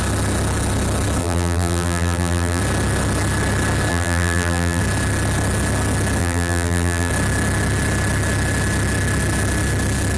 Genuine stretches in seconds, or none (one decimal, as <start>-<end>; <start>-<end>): 0.0-1.2; 2.6-3.9; 4.8-6.2; 7.1-10.2